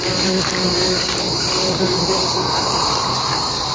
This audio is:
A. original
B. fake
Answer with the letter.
B